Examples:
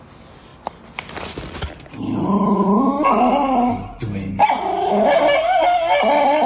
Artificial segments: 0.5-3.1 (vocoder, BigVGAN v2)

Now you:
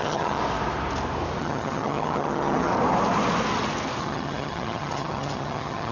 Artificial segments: 0.0-0.4 (vocoder, HiFi-GAN); 1.4-2.7; 4.0-5.9

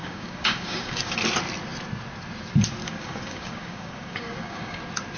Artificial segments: 0.0-1.2 (codec, DAC); 2.8-4.8

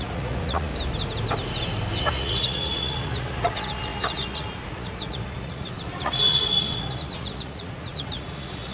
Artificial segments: 0.0-0.7 (vocoder, Vocos); 2.0-8.7

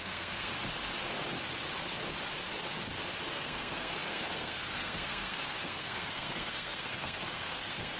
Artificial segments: 0.0-0.5 (codec, SNAC); 3.3-8.0

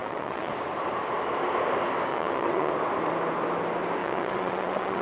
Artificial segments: 0.0-0.5 (vocoder, WaveNeXt); 2.1-2.7; 4.0-5.0